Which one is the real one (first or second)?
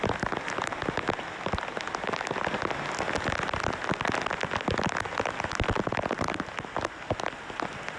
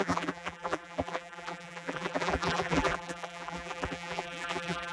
first